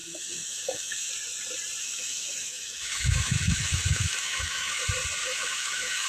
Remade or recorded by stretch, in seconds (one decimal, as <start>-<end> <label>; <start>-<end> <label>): 0.0-1.1 remade; 1.1-1.8 recorded; 1.8-4.8 remade; 4.8-5.2 recorded; 5.2-6.1 remade